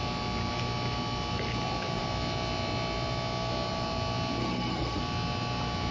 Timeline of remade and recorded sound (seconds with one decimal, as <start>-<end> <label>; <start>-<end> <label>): 0.0-4.4 recorded; 4.4-5.0 remade; 5.0-5.9 recorded